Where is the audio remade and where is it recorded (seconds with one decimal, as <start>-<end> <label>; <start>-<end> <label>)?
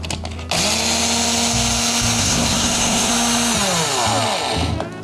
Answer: 0.0-2.2 recorded; 2.2-3.1 remade; 3.1-5.0 recorded